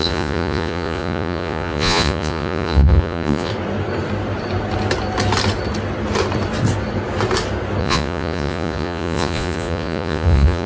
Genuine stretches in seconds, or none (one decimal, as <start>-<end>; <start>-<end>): 3.5-7.8